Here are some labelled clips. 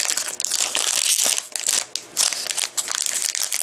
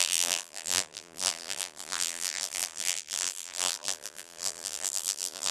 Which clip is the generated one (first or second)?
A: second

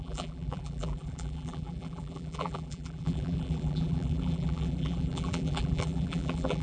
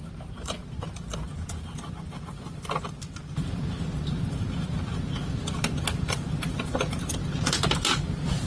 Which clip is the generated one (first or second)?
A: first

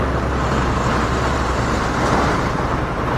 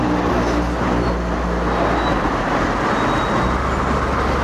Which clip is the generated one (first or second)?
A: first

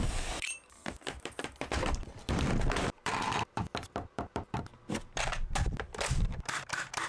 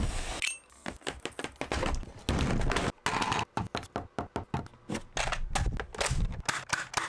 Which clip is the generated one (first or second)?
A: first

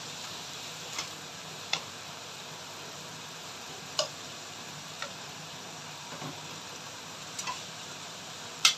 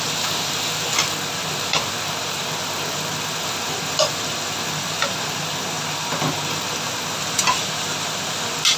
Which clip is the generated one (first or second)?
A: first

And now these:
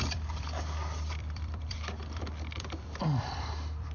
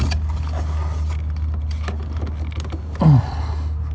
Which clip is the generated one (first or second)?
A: first